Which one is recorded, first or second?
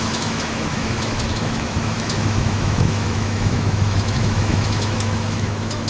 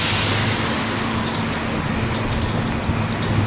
second